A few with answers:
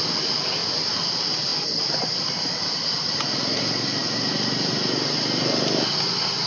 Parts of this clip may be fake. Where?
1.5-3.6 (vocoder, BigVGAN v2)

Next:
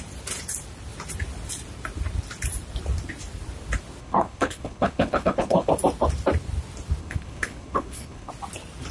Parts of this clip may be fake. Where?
4.0-5.7 (codec, HILCodec); 7.0-8.3

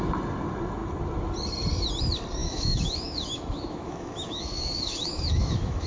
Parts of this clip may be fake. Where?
2.4-5.9 (autoencoder, DAC-VAE)